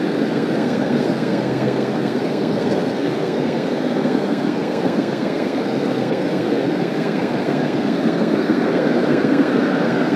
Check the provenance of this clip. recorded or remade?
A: remade